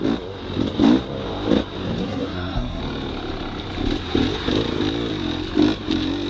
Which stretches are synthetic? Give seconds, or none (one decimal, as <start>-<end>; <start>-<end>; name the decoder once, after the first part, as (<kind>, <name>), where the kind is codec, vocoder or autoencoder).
2.0-2.8 (codec, SNAC)